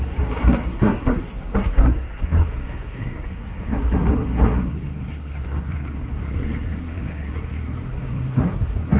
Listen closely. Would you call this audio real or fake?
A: fake